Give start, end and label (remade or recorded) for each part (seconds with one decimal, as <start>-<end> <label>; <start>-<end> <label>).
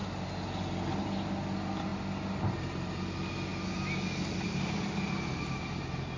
0.0-6.2 recorded